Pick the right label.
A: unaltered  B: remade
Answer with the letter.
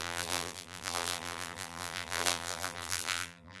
B